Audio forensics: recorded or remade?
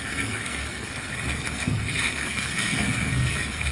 remade